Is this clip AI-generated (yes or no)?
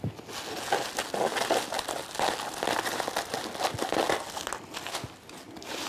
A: no